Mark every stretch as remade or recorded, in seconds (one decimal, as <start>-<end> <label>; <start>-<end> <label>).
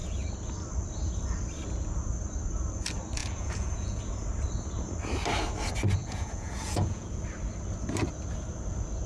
0.0-3.2 recorded; 3.2-4.0 remade; 4.0-6.0 recorded; 6.0-7.2 remade; 7.2-9.1 recorded